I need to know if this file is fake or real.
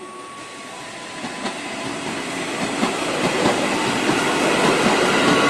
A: real